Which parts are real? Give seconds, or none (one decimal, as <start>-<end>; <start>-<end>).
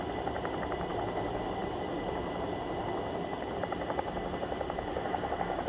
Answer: 0.0-5.7